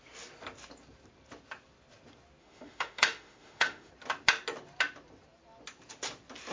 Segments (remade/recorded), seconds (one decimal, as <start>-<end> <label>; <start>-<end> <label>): 0.0-2.4 recorded; 2.4-3.9 remade; 3.9-6.5 recorded